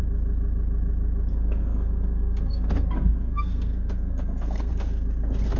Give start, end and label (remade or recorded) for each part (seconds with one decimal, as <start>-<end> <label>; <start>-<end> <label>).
0.0-1.3 recorded; 1.3-4.7 remade; 4.7-5.6 recorded